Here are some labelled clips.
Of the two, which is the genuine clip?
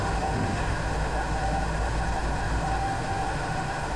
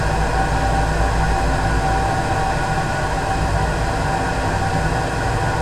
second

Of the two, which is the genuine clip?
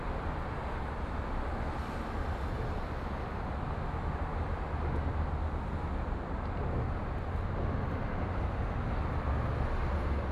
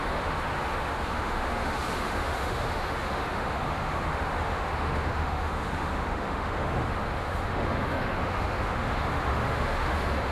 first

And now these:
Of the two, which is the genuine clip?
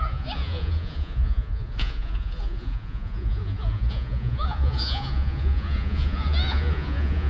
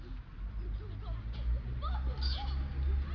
second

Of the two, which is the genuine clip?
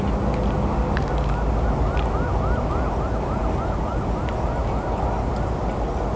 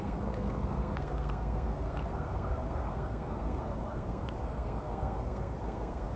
first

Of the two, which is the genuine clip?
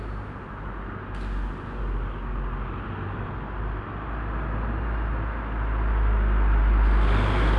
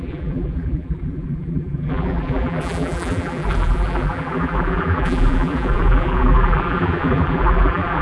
first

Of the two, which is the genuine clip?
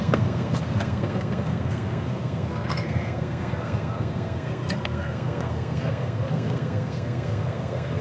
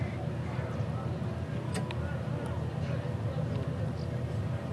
second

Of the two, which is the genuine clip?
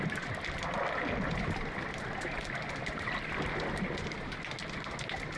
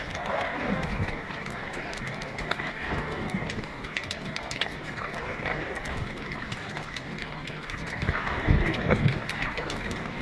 first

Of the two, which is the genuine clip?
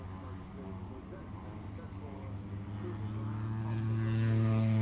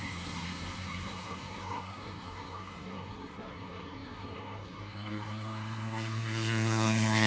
first